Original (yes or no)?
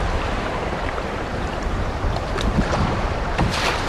no